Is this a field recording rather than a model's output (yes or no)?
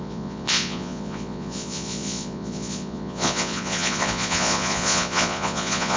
no